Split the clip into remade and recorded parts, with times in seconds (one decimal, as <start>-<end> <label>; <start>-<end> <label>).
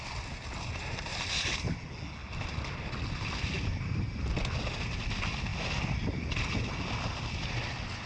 0.0-1.1 recorded; 1.1-1.6 remade; 1.6-2.2 recorded; 2.2-4.0 remade; 4.0-8.1 recorded